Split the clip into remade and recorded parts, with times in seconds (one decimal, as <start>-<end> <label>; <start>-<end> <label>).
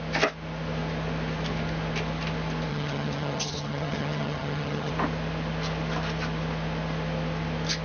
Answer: 0.0-2.7 recorded; 2.7-4.9 remade; 4.9-7.8 recorded